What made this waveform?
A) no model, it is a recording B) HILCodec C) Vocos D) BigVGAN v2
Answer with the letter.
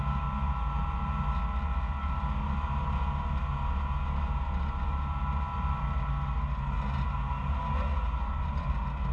A